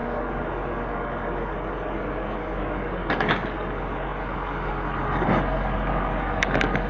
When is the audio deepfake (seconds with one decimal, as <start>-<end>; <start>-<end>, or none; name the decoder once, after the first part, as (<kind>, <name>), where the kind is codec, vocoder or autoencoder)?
0.0-6.9 (codec, DAC)